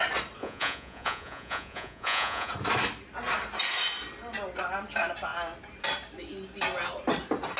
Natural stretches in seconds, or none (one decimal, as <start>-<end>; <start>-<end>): 0.0-0.4; 2.5-7.6